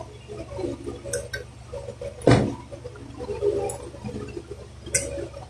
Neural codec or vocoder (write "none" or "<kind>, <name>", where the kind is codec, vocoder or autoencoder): none